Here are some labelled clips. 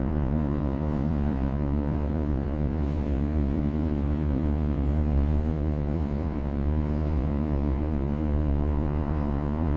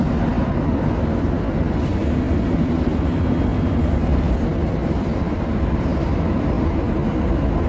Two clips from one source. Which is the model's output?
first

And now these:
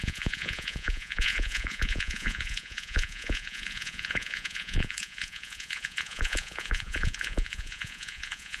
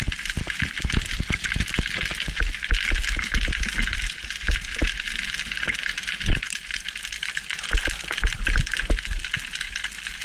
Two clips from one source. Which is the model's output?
first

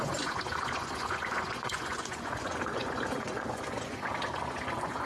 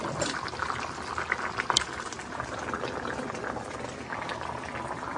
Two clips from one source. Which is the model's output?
first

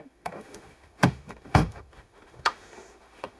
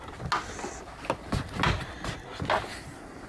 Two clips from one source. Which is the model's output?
first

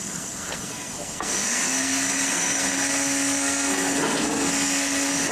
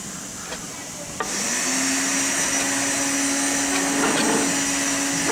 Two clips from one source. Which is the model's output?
first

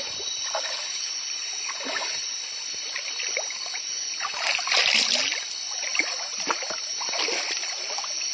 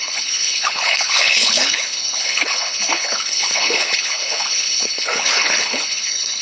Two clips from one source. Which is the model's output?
second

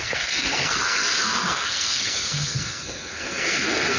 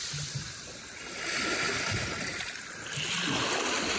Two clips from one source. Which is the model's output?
first